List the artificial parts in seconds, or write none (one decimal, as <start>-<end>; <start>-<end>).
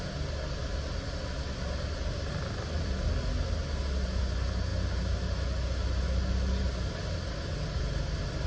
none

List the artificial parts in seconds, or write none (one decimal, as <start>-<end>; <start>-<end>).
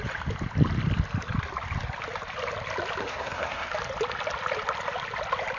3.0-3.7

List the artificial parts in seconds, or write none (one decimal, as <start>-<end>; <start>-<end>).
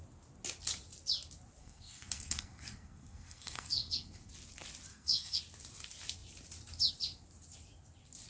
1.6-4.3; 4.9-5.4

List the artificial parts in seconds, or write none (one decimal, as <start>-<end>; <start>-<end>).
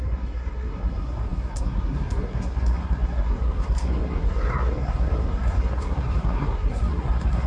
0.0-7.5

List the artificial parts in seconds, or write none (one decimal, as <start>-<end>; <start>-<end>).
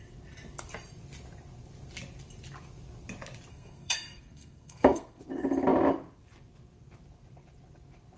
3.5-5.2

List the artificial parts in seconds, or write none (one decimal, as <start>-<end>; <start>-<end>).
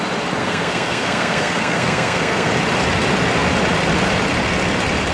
0.4-2.5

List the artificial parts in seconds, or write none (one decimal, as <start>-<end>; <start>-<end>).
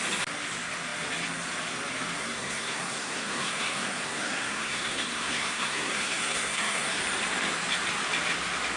2.2-7.0